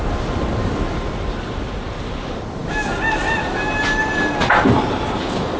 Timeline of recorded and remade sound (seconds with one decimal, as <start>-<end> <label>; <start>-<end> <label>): 0.0-5.6 recorded

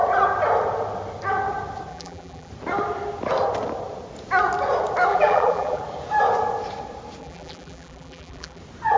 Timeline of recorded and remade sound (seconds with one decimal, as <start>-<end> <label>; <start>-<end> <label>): 0.0-1.9 recorded; 1.9-2.5 remade; 2.5-5.1 recorded; 5.1-5.8 remade; 5.8-7.2 recorded; 7.2-8.6 remade; 8.6-9.0 recorded